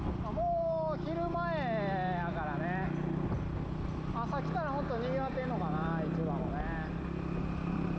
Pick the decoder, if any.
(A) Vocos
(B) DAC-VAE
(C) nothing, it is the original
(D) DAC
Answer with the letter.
C